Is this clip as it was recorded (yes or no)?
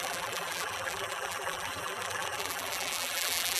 no